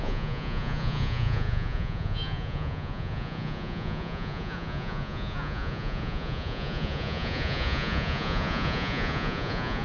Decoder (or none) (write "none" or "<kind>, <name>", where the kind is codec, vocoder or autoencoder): vocoder, Vocos